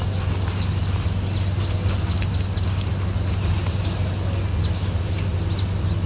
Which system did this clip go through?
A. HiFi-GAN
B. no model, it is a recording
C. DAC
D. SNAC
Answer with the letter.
B